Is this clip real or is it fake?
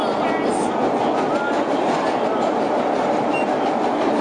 real